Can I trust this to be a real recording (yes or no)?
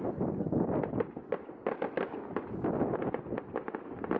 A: yes